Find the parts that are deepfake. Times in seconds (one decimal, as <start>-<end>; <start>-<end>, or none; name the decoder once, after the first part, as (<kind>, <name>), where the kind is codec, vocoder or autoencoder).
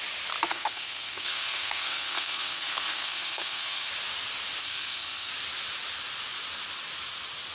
0.5-3.9 (codec, SNAC); 4.6-5.3